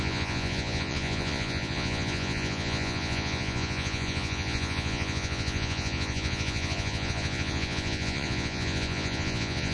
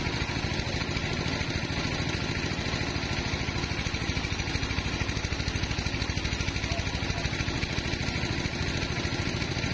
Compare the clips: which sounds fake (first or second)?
first